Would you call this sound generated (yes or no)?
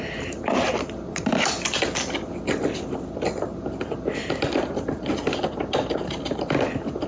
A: no